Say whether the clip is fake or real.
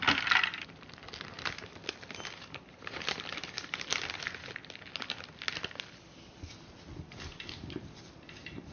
real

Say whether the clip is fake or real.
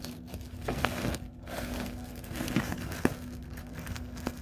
fake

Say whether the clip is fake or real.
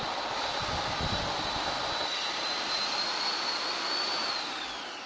real